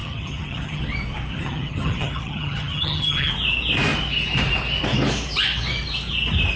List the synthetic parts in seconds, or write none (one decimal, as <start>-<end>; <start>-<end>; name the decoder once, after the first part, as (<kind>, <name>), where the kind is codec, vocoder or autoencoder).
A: 0.0-0.8 (vocoder, HiFi-GAN); 1.3-3.3